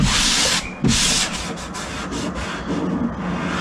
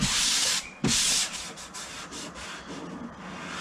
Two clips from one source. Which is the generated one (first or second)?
second